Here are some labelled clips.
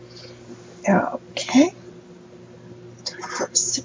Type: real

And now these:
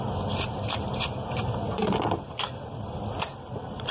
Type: fake